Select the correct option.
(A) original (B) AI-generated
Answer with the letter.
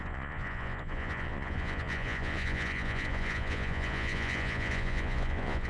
B